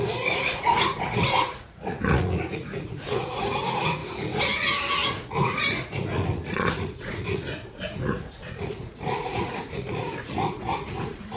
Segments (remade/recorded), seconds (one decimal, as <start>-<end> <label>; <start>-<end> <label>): 0.0-11.4 remade